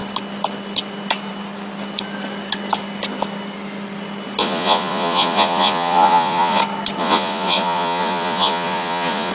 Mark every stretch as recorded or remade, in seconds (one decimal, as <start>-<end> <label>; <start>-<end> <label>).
0.0-4.4 recorded; 4.4-6.6 remade; 6.6-7.0 recorded; 7.0-9.3 remade